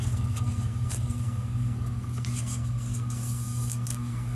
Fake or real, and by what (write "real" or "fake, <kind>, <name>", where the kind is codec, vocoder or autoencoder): fake, codec, SNAC